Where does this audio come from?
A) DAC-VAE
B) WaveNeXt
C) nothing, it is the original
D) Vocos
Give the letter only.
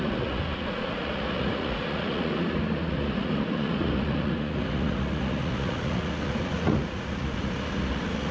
D